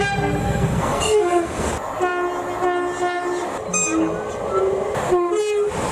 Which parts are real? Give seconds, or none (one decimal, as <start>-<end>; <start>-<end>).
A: 0.0-0.4; 1.7-5.9